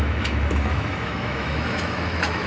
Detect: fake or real fake